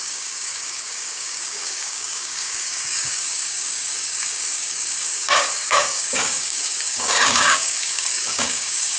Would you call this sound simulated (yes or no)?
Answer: yes